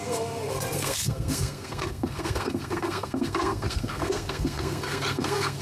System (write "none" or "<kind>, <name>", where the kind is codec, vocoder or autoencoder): codec, SNAC